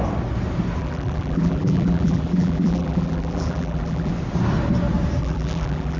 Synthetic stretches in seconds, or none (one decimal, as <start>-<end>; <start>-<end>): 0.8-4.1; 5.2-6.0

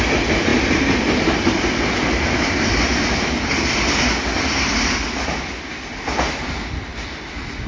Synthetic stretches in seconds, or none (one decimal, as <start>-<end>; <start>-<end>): 0.5-1.6; 6.9-7.7

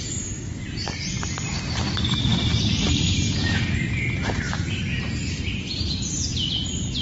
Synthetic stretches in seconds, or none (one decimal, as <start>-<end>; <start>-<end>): none

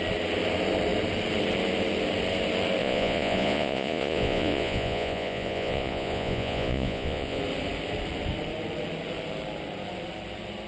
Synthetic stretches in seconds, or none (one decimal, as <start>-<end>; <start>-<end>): 2.8-7.4

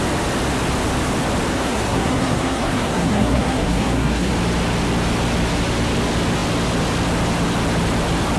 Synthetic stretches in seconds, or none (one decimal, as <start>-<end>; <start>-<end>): 1.5-4.3

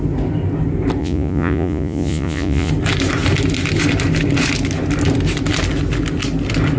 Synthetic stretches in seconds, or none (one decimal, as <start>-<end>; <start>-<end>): 1.0-2.7

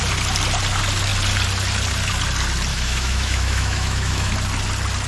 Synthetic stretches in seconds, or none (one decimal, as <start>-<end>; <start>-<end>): 2.7-4.3